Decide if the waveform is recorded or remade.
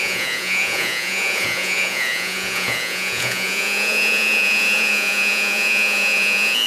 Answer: remade